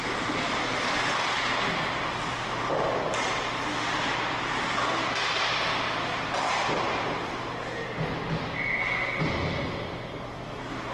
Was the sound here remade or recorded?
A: recorded